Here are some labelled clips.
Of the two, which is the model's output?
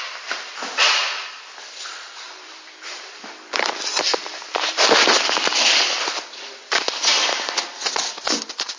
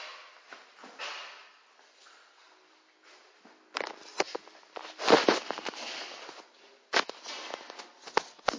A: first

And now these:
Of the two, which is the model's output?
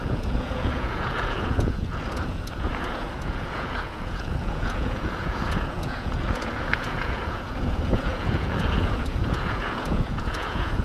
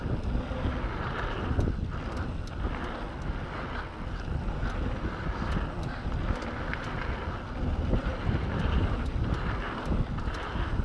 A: first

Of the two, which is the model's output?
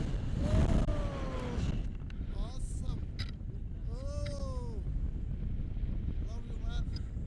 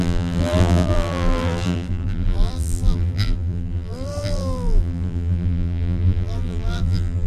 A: second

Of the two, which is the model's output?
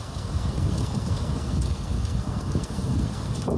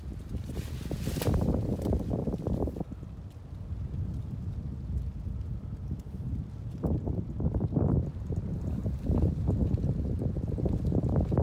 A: first